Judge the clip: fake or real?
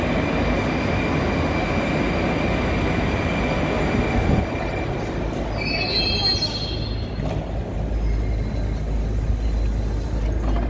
real